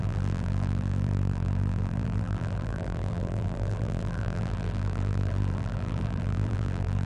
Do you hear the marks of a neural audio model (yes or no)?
yes